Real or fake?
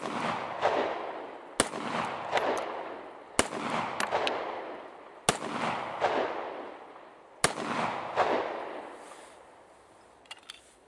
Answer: real